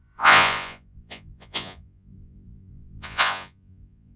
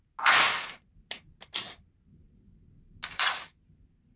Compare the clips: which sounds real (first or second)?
second